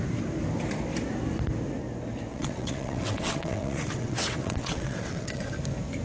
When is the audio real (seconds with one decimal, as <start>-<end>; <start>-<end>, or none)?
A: 0.0-2.3; 5.5-6.0